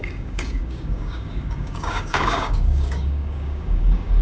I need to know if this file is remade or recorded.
remade